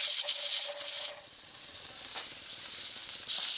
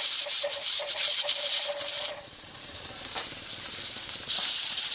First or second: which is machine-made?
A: second